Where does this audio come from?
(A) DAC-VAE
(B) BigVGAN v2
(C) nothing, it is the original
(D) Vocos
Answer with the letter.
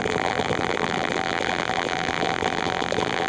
B